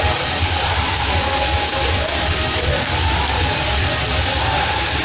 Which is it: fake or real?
real